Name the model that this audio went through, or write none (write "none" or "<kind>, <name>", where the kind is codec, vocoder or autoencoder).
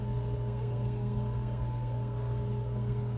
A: codec, SNAC